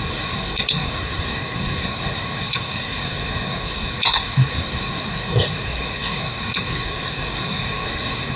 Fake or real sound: fake